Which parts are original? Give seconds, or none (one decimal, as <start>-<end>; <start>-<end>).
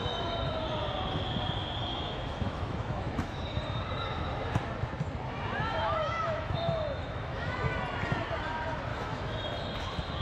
0.0-1.9; 3.4-5.8; 7.5-8.9; 9.4-10.2